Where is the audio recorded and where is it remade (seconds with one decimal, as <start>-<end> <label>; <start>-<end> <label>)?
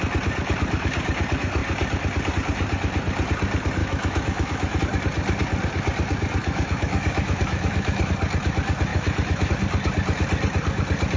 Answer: 0.0-3.8 recorded; 3.8-4.8 remade; 4.8-6.4 recorded; 6.4-8.1 remade; 8.1-8.9 recorded; 8.9-9.5 remade; 9.5-11.2 recorded